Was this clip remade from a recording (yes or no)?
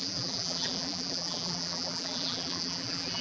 yes